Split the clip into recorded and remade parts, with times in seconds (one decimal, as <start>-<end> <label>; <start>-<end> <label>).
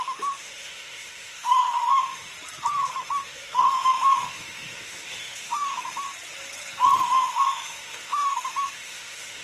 0.0-2.3 remade; 2.3-2.9 recorded; 2.9-6.1 remade; 6.1-7.0 recorded; 7.0-9.4 remade